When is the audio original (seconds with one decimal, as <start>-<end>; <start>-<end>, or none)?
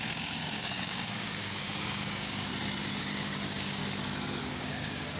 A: 2.5-3.0; 3.8-4.4